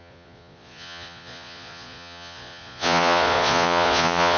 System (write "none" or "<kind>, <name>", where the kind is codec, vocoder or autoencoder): vocoder, Vocos